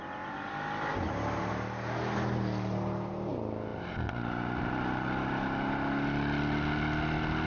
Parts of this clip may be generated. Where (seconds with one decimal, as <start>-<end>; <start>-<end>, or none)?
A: none